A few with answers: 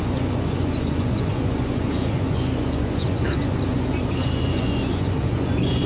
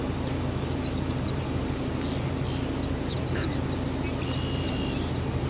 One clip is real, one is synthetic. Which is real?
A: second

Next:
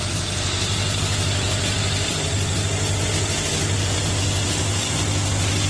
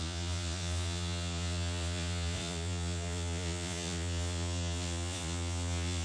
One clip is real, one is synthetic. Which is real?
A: first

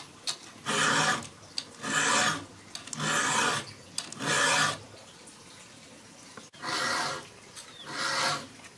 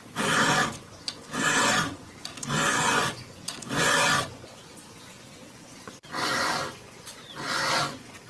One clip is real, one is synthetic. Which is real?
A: first